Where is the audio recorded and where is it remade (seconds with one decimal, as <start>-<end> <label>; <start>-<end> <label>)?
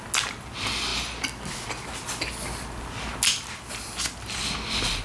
0.0-5.0 recorded